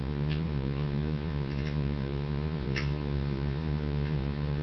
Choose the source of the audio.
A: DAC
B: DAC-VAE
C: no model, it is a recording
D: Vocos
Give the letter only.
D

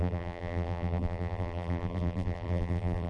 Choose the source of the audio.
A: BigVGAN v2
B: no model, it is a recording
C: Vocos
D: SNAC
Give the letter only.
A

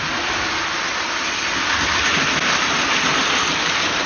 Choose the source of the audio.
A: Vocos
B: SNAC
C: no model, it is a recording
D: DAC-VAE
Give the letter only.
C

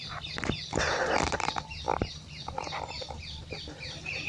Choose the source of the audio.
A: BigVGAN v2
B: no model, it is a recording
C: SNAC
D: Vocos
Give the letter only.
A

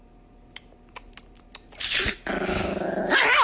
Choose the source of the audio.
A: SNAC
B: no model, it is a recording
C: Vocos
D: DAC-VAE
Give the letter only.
B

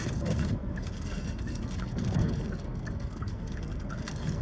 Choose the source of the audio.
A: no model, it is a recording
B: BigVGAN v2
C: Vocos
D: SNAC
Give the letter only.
D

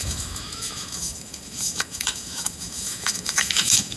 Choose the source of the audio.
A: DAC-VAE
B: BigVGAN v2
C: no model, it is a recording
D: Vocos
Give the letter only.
A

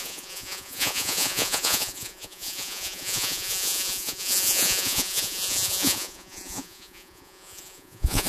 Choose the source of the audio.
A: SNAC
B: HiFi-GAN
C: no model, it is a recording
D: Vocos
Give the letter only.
D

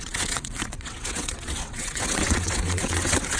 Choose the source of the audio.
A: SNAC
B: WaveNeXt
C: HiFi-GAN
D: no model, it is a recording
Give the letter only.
B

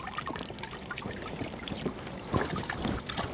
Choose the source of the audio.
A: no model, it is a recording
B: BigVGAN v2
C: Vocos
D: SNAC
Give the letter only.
A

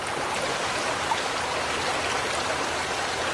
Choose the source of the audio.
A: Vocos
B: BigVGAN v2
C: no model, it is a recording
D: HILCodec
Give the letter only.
B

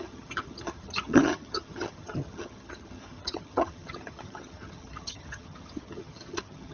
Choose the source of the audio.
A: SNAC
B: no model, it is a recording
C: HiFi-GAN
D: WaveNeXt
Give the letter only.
C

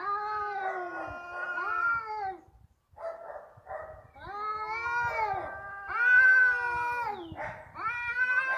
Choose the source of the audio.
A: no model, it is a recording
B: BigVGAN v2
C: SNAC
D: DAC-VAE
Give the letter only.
A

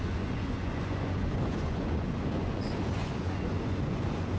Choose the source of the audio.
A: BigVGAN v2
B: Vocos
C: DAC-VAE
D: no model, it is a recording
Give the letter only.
B